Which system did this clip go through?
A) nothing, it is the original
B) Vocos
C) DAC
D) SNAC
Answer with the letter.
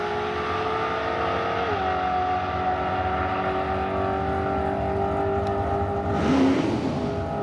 A